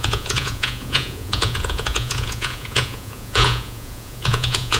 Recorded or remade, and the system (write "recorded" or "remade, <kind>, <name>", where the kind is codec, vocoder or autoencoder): remade, vocoder, Vocos